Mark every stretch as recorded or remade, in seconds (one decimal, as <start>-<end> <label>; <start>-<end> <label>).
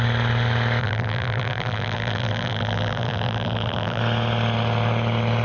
0.0-0.8 recorded; 0.8-4.0 remade; 4.0-5.4 recorded